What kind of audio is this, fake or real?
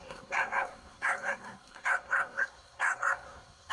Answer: fake